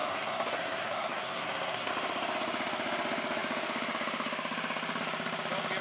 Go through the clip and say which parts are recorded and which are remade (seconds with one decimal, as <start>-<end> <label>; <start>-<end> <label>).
0.0-1.9 remade; 1.9-5.8 recorded